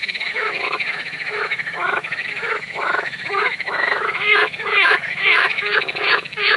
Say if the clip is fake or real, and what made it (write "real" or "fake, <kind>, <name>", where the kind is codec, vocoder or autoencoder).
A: fake, autoencoder, DAC-VAE